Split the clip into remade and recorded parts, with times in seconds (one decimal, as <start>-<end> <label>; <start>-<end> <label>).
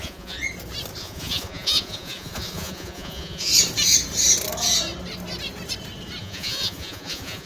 0.0-0.4 remade; 0.4-1.0 recorded; 1.0-3.5 remade; 3.5-6.2 recorded; 6.2-7.5 remade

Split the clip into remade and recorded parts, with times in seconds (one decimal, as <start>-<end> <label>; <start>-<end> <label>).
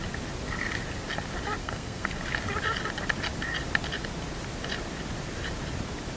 0.0-1.6 recorded; 1.6-2.2 remade; 2.2-6.2 recorded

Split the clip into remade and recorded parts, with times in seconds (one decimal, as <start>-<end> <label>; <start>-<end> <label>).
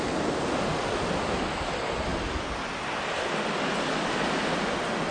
0.0-5.1 recorded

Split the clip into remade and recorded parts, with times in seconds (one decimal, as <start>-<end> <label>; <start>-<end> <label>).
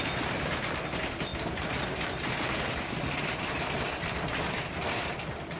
0.0-5.6 recorded